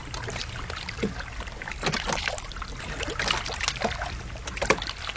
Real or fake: real